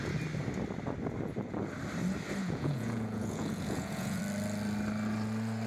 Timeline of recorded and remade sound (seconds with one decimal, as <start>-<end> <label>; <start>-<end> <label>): 0.0-2.4 recorded; 2.4-4.2 remade; 4.2-5.7 recorded